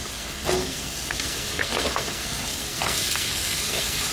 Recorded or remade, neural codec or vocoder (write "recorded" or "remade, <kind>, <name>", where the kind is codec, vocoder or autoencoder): remade, codec, SNAC